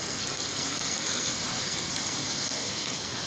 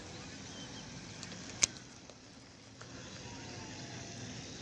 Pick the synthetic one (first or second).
first